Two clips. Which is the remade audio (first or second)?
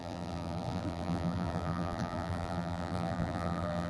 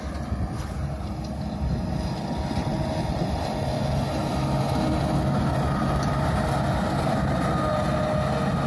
first